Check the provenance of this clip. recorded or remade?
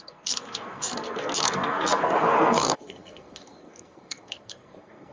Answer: remade